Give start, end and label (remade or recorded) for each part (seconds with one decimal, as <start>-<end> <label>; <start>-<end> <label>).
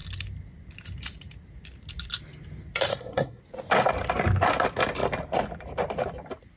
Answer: 0.0-2.9 recorded; 2.9-3.4 remade; 3.4-6.6 recorded